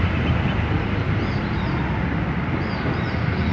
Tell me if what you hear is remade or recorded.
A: remade